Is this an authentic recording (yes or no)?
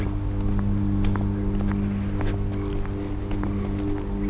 yes